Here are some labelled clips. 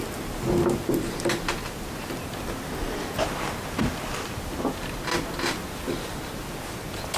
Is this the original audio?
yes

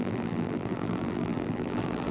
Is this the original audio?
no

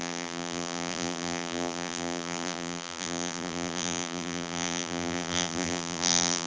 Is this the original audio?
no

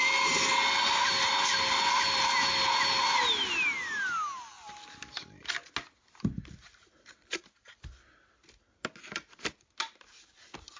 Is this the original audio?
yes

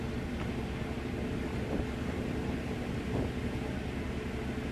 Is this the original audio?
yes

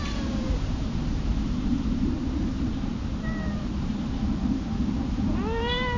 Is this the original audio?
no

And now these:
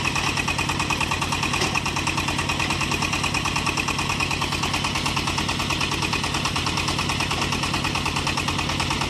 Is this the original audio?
yes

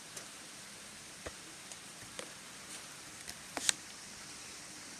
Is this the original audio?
no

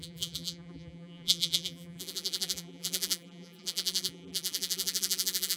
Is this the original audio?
no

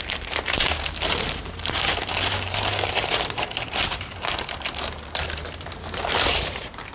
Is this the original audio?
no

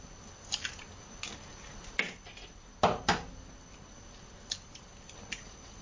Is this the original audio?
yes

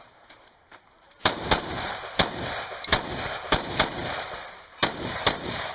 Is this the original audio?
no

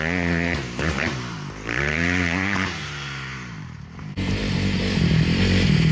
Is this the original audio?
no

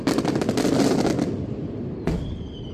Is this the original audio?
yes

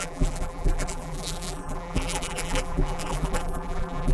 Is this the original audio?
no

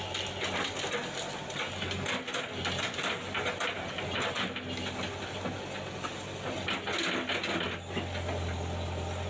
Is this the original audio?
yes